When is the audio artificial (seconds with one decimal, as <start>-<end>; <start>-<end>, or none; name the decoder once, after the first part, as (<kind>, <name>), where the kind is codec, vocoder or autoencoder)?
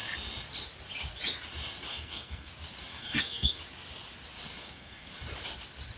1.9-2.5 (codec, SNAC); 2.9-3.6; 4.6-5.1